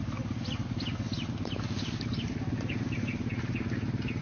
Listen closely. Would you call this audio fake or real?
real